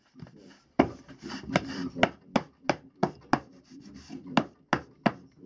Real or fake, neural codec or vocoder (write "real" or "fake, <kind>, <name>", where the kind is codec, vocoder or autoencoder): real